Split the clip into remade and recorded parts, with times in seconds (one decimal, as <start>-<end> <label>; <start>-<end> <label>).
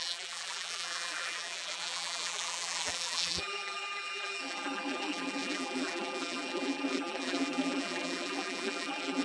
0.0-9.2 remade